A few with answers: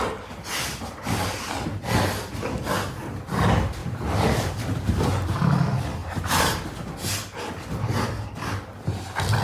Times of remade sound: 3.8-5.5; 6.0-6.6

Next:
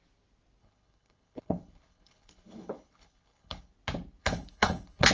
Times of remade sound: 0.6-3.7; 4.2-5.1

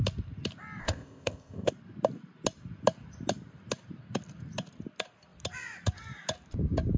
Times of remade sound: 0.8-1.7